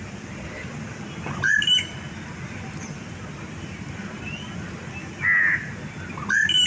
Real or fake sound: real